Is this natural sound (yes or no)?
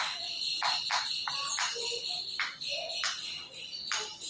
yes